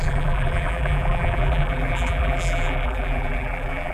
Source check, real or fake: fake